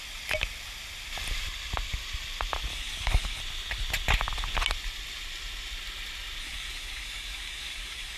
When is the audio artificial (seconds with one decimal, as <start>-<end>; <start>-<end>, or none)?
2.7-3.4; 6.4-8.2